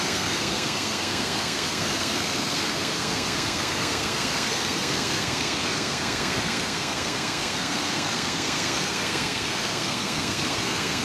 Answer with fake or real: fake